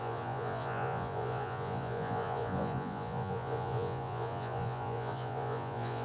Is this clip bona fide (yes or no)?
no